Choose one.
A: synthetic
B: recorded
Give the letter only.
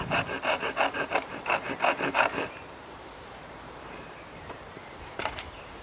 A